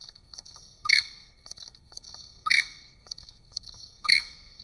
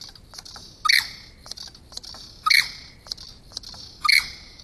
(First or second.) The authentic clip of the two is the second